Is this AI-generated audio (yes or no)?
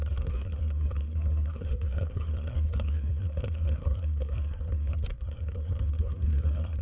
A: yes